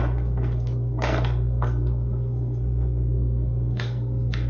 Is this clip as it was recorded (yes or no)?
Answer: no